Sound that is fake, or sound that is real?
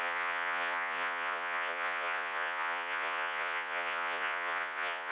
fake